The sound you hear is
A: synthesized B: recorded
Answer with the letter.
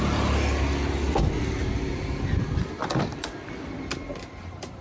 B